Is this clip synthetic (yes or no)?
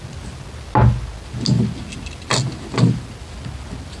no